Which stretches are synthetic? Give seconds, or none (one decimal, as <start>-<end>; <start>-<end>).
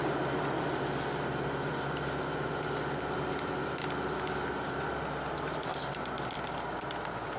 none